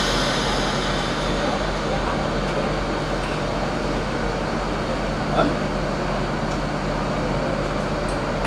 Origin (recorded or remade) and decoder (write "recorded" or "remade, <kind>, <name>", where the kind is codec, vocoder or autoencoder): recorded